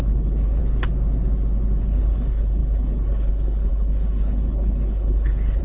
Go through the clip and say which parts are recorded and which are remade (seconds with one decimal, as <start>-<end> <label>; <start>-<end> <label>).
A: 0.0-0.6 remade; 0.6-1.8 recorded; 1.8-5.6 remade